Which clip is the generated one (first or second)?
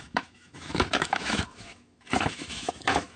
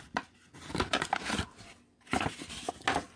first